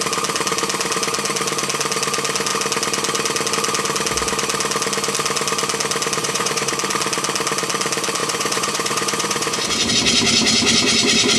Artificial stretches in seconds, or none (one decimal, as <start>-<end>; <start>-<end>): 6.2-6.7; 8.2-9.9